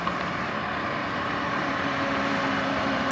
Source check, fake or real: fake